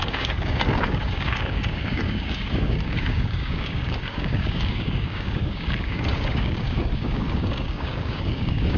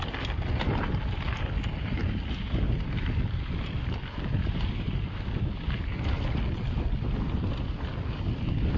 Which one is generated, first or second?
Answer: first